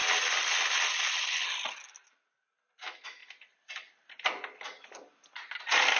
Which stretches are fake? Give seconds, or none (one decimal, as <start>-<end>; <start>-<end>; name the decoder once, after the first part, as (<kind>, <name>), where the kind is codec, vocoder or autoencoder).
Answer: none